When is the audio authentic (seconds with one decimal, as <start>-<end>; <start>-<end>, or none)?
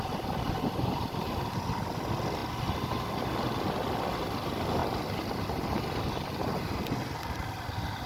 0.0-8.1